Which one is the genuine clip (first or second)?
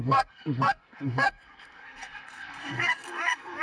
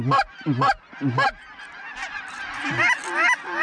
second